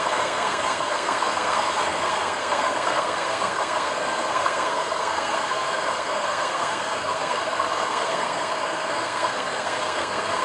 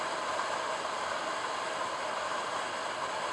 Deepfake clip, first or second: first